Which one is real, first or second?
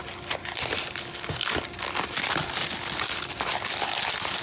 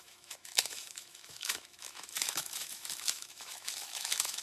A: first